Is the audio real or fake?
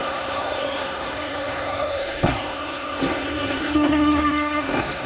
fake